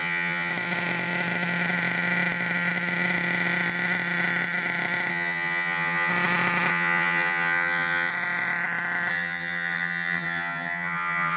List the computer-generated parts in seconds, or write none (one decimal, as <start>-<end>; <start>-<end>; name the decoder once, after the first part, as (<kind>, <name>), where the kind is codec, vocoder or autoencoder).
0.0-0.5 (vocoder, HiFi-GAN); 5.1-6.1; 6.7-8.1; 9.1-11.4